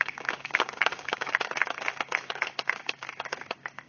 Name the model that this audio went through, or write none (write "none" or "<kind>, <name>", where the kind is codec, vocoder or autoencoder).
codec, DAC